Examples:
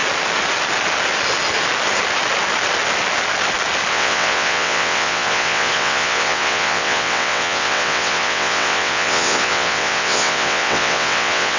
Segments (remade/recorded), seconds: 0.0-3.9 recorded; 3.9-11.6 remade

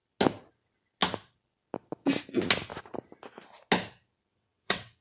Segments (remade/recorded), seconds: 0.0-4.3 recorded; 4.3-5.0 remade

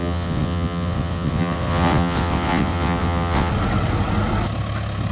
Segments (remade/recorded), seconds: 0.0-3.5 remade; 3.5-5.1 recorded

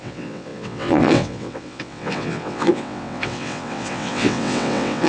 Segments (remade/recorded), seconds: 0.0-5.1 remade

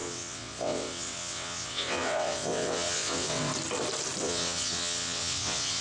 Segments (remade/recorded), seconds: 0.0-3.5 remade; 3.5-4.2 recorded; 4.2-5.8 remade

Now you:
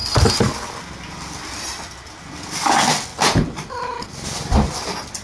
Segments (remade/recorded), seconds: 0.0-5.2 recorded

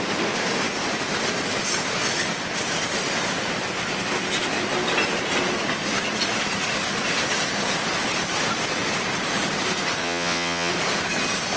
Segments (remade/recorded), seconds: 0.0-10.0 recorded; 10.0-10.7 remade; 10.7-11.6 recorded